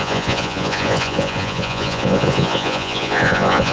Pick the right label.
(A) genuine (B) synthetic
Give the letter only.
B